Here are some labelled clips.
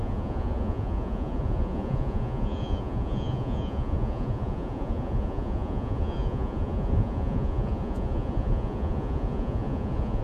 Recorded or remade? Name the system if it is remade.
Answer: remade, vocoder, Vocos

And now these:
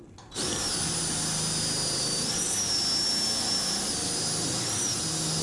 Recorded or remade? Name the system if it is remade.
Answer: recorded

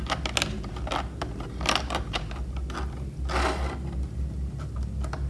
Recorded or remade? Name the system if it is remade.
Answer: recorded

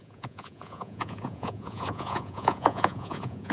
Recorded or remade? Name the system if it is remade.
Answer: remade, vocoder, Vocos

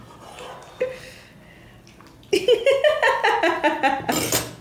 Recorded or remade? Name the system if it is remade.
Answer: recorded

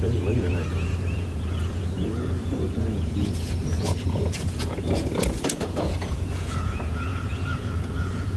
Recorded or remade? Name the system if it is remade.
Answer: remade, vocoder, Vocos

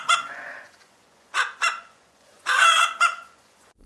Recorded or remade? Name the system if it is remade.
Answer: remade, vocoder, Vocos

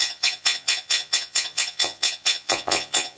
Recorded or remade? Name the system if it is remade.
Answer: remade, vocoder, Vocos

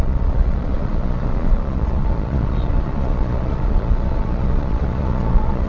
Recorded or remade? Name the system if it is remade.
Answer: remade, vocoder, Vocos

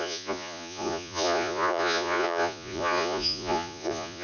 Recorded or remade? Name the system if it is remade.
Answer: remade, vocoder, Vocos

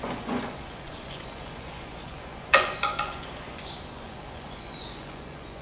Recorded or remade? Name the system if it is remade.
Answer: remade, vocoder, Vocos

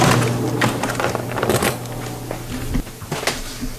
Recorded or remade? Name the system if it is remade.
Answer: recorded